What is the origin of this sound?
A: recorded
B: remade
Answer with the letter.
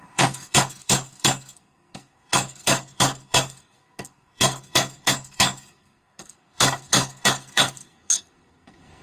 B